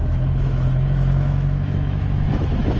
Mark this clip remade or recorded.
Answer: remade